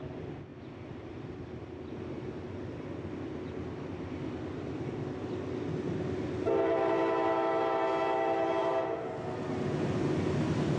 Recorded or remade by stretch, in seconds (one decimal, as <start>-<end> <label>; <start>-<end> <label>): 0.0-10.8 recorded